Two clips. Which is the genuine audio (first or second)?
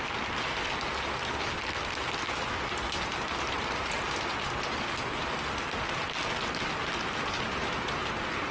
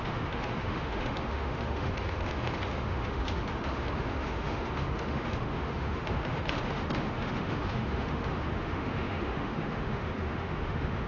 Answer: first